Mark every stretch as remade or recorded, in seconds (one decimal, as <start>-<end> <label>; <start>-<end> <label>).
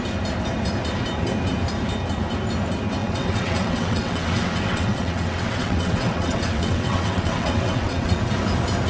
0.0-3.0 recorded; 3.0-8.2 remade; 8.2-8.9 recorded